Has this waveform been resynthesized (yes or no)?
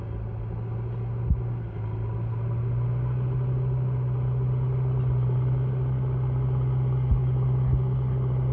no